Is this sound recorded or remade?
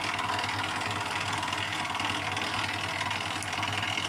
recorded